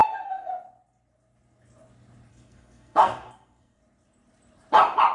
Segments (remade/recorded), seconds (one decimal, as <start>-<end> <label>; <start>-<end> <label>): 0.0-0.5 remade; 0.5-2.3 recorded; 2.3-3.8 remade; 3.8-5.1 recorded